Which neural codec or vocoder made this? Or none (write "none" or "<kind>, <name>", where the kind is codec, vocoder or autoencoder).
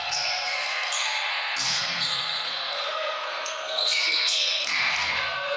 codec, SNAC